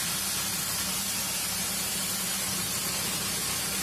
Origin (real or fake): real